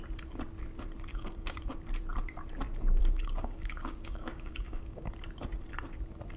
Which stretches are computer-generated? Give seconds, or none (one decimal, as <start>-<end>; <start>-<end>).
1.1-1.8; 3.0-5.1